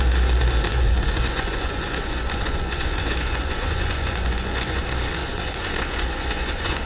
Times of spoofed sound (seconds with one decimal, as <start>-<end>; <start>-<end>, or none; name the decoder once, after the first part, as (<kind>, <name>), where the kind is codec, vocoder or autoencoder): 0.7-4.8 (vocoder, Vocos); 5.2-6.8